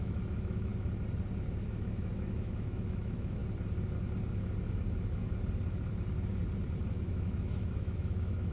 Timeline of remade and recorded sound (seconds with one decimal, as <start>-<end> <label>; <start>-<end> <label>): 0.0-0.7 remade; 0.7-1.7 recorded; 1.7-3.4 remade; 3.4-6.9 recorded; 6.9-8.5 remade

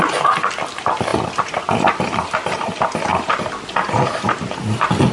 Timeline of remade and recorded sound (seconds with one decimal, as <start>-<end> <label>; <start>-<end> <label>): 0.0-5.1 recorded

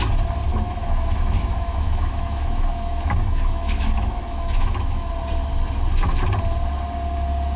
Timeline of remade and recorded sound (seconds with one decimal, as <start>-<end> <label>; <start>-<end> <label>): 0.0-0.5 recorded; 0.5-5.1 remade; 5.1-7.6 recorded

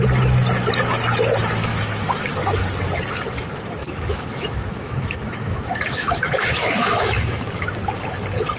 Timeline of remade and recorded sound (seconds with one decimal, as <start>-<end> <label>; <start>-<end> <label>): 0.0-1.7 recorded; 1.7-2.3 remade; 2.3-3.8 recorded; 3.8-7.4 remade; 7.4-8.6 recorded

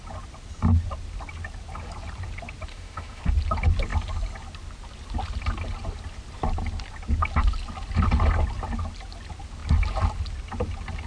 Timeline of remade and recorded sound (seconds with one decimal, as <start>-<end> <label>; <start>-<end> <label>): 0.0-2.7 recorded; 2.7-3.2 remade; 3.2-11.1 recorded

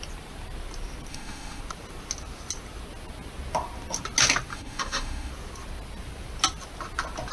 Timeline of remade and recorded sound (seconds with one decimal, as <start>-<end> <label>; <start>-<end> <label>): 0.0-1.1 recorded; 1.1-1.6 remade; 1.6-4.5 recorded; 4.5-5.3 remade; 5.3-7.3 recorded

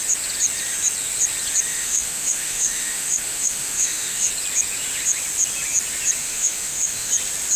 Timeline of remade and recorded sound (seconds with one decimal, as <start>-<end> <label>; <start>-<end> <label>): 0.0-1.7 recorded; 1.7-4.3 remade; 4.3-6.2 recorded; 6.2-7.1 remade; 7.1-7.6 recorded